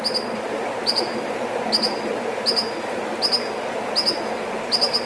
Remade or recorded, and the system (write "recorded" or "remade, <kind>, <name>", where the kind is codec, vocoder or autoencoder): recorded